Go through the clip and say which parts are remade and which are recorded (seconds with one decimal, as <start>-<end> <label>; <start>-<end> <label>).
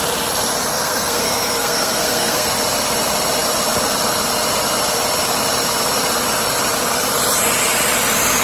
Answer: 0.0-0.7 recorded; 0.7-2.5 remade; 2.5-8.4 recorded